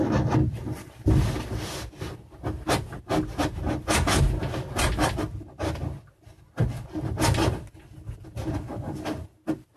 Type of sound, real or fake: real